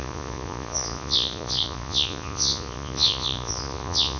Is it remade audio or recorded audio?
remade